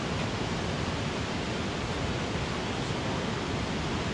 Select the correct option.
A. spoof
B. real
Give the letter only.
B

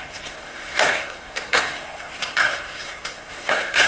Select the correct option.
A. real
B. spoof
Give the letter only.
B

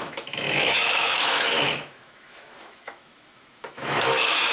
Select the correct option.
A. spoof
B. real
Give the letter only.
A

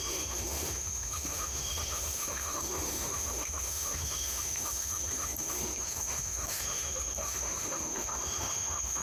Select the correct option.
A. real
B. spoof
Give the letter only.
B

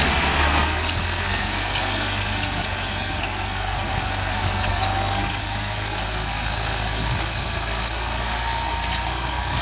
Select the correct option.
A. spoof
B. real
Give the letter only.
A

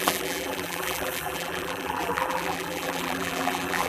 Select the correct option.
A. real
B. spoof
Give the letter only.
B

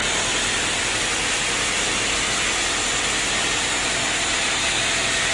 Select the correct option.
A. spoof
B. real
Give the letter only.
B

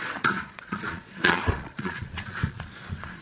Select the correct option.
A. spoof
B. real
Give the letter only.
A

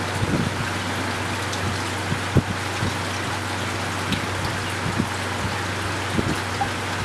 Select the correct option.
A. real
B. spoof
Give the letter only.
A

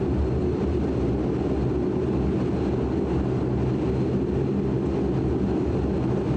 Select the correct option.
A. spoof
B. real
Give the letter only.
B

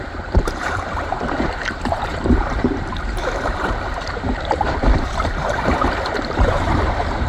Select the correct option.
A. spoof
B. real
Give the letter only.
A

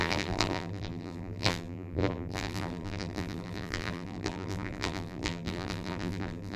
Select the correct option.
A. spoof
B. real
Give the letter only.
A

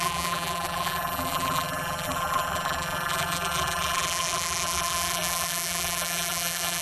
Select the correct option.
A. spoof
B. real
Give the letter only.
A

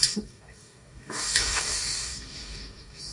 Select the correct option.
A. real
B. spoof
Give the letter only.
B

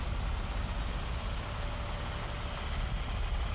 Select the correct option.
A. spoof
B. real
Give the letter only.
B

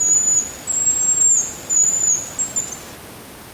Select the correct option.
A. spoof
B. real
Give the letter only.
B